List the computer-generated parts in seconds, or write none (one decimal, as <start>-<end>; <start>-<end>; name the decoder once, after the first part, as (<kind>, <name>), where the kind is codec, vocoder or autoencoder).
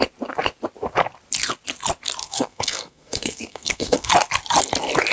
2.2-4.1 (codec, SNAC)